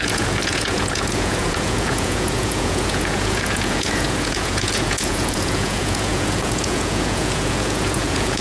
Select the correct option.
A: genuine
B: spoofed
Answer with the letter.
B